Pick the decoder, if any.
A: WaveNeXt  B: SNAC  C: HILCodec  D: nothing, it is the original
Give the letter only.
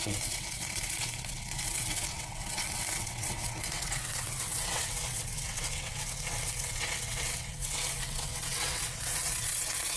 A